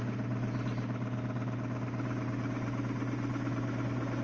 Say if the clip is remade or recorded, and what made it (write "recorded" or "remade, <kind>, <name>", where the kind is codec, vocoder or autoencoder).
recorded